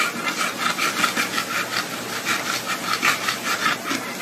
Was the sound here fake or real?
real